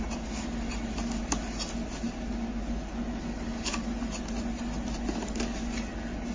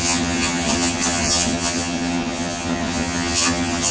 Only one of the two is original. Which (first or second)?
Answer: first